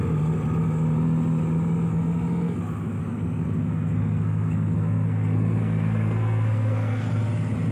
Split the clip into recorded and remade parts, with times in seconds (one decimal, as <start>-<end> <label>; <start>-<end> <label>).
0.0-1.9 recorded; 1.9-2.6 remade; 2.6-3.0 recorded; 3.0-7.1 remade; 7.1-7.7 recorded